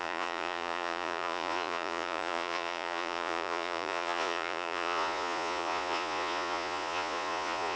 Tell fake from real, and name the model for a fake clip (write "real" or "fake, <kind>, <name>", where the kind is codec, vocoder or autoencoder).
fake, vocoder, Vocos